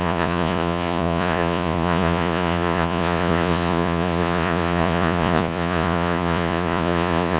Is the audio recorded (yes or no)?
no